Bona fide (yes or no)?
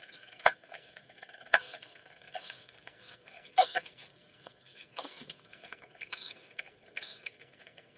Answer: no